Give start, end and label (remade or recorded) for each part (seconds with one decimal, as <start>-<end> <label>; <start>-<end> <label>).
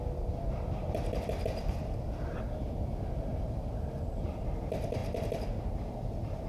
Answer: 0.0-6.5 recorded